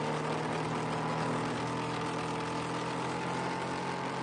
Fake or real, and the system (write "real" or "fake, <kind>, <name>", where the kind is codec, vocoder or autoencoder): real